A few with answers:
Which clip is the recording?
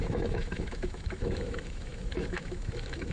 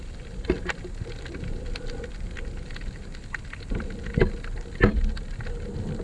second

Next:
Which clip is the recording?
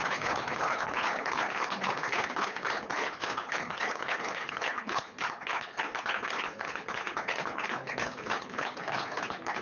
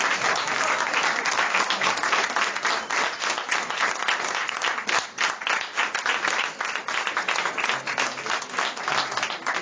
second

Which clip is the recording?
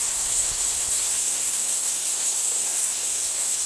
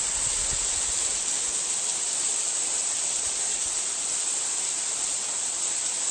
second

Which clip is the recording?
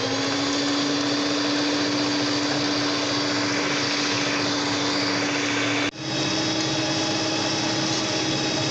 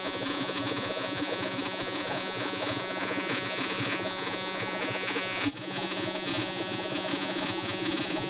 first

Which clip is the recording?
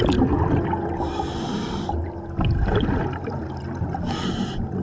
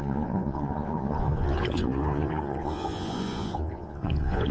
first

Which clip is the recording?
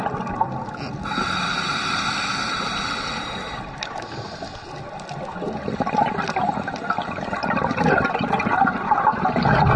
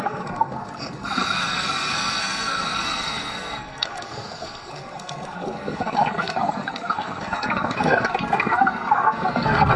first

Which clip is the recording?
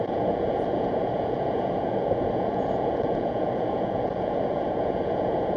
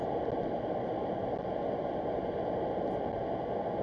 second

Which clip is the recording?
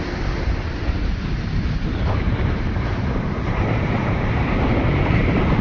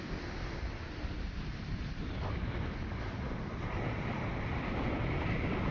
second